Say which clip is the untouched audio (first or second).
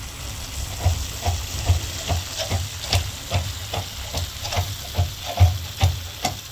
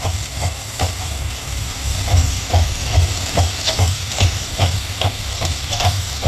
first